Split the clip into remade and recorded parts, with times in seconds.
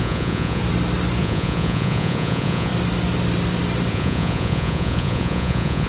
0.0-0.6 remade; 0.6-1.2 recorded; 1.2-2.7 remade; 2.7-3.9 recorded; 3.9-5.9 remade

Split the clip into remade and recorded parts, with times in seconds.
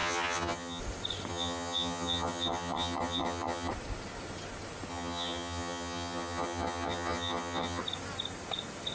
0.0-0.8 remade; 0.8-1.3 recorded; 1.3-3.7 remade; 3.7-4.9 recorded; 4.9-7.8 remade; 7.8-8.9 recorded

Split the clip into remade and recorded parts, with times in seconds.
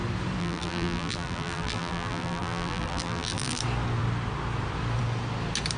0.0-0.4 recorded; 0.4-3.6 remade; 3.6-5.8 recorded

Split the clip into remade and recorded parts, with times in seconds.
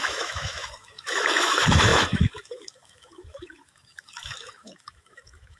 0.0-5.6 remade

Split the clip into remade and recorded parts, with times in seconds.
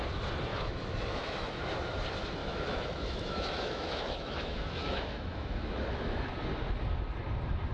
0.0-0.5 recorded; 0.5-1.6 remade; 1.6-2.4 recorded; 2.4-6.3 remade; 6.3-7.7 recorded